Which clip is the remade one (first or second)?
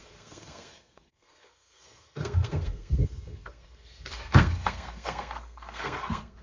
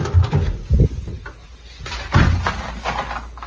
first